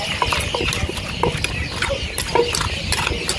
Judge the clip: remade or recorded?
recorded